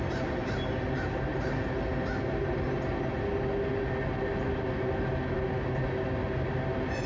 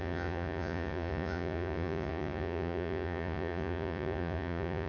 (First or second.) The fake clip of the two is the second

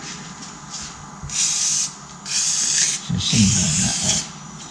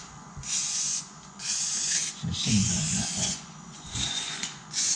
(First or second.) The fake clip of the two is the second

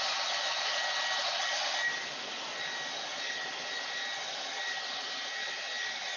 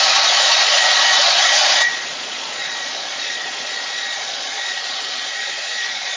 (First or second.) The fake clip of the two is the second